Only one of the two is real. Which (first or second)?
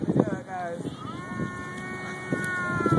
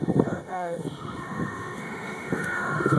first